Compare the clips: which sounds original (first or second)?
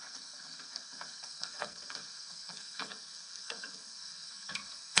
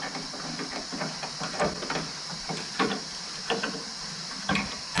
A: second